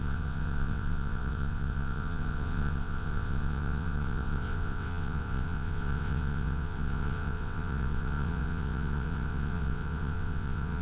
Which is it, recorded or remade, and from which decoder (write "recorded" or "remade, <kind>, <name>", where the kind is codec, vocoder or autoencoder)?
remade, vocoder, WaveNeXt